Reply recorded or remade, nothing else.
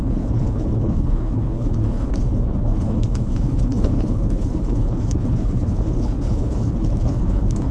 remade